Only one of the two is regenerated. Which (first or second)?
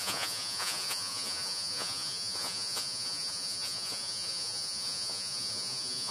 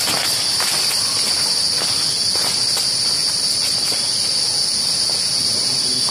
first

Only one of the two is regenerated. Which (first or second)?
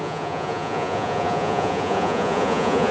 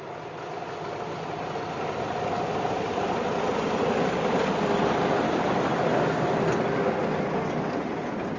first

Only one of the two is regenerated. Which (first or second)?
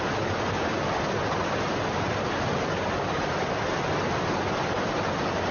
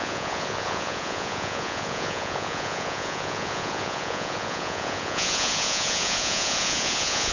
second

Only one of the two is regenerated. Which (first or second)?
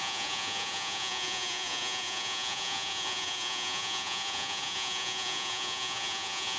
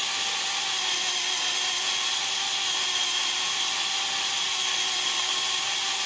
first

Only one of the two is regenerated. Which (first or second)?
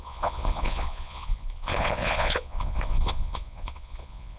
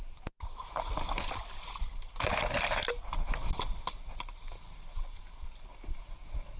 first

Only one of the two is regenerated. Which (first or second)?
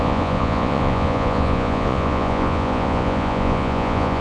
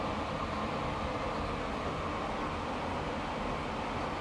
first